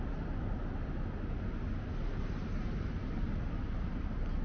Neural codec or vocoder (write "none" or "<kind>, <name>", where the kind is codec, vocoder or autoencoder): none